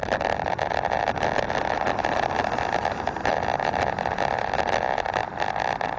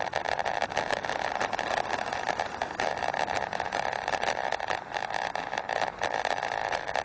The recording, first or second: first